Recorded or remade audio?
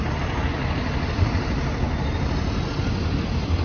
recorded